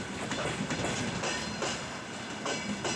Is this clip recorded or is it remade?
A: recorded